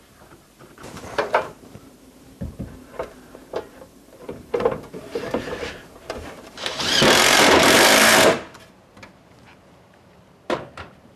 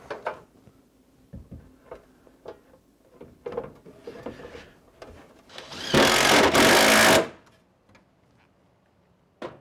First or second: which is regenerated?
first